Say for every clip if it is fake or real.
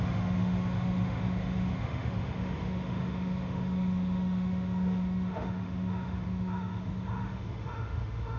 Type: fake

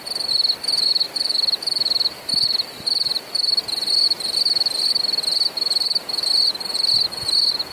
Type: real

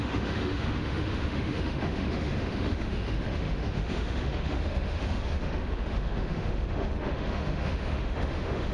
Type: fake